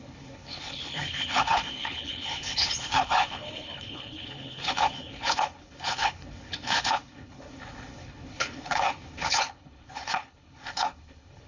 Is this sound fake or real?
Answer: fake